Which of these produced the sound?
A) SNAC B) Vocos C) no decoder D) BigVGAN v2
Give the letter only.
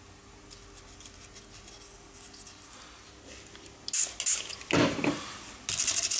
C